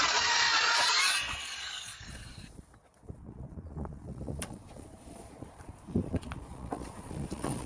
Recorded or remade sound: remade